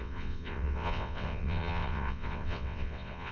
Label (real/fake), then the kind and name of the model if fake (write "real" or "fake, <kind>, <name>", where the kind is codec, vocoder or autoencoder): fake, vocoder, WaveNeXt